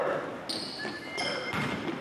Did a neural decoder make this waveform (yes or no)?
no